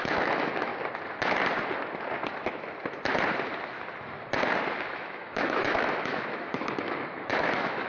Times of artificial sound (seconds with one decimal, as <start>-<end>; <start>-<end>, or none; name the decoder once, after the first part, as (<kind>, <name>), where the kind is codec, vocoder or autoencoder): 0.0-0.7 (autoencoder, DAC-VAE); 4.8-7.9